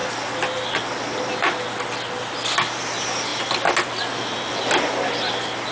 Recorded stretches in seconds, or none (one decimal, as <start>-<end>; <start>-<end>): 0.0-5.7